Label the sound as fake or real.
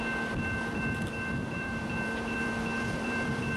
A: fake